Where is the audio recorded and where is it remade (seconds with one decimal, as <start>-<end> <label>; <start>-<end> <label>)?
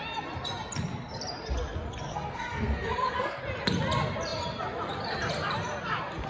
0.0-2.1 recorded; 2.1-3.4 remade; 3.4-6.3 recorded